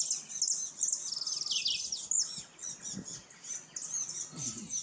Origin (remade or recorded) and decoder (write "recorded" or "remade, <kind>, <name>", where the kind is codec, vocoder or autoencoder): recorded